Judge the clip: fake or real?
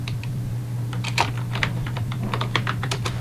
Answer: fake